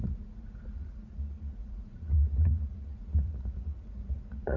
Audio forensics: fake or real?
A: fake